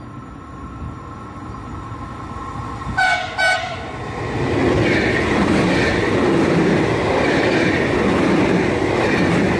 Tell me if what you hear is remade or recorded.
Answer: recorded